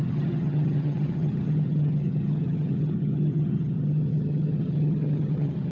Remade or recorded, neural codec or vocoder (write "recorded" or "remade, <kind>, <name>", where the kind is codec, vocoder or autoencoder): remade, vocoder, HiFi-GAN